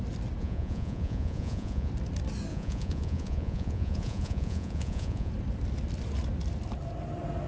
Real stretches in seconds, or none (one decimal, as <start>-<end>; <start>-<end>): 0.0-0.4; 1.9-2.5; 5.3-7.5